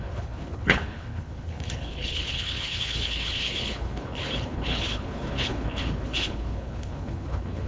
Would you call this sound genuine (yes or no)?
no